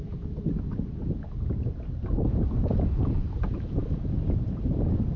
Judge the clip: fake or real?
real